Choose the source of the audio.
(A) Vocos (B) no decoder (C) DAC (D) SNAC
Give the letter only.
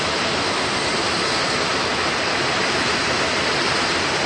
B